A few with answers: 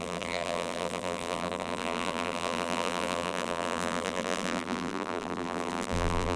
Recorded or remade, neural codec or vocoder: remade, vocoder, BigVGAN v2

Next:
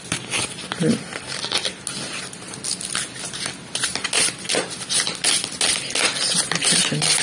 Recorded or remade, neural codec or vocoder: recorded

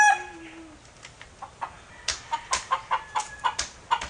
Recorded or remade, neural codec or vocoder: recorded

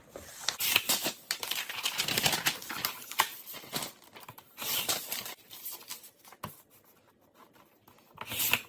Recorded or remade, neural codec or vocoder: remade, vocoder, BigVGAN v2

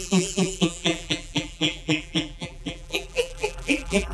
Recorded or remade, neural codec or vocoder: remade, vocoder, BigVGAN v2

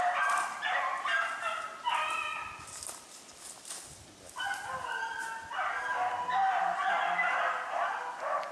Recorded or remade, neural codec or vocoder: recorded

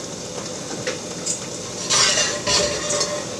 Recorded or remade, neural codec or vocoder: recorded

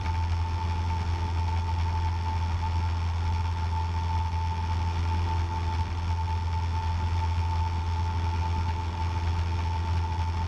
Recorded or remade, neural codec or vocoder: recorded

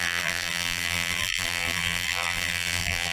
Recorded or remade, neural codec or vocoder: remade, vocoder, BigVGAN v2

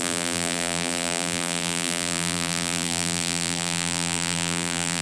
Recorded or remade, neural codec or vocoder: remade, vocoder, BigVGAN v2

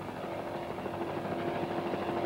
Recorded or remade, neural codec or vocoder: recorded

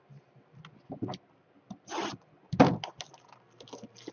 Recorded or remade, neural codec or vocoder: recorded